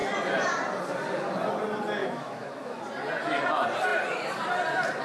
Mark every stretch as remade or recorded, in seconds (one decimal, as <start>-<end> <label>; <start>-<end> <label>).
0.0-2.0 recorded; 2.0-2.8 remade; 2.8-5.0 recorded